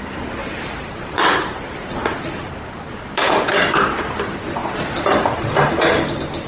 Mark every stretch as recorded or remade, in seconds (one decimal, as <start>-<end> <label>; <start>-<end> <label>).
0.0-0.4 recorded; 0.4-3.4 remade; 3.4-6.5 recorded